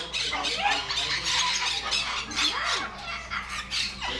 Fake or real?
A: real